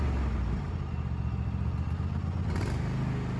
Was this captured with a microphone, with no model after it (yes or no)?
yes